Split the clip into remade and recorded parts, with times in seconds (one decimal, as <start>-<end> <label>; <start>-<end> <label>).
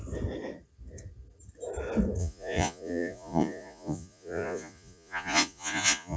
0.0-2.2 recorded; 2.2-6.2 remade